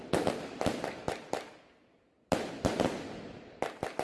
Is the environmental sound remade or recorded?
remade